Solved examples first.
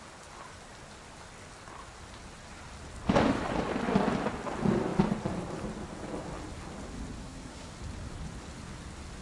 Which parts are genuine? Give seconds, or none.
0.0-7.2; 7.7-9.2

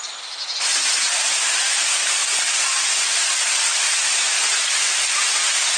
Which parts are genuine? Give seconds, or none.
0.0-5.8